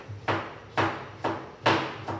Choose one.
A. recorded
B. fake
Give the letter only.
A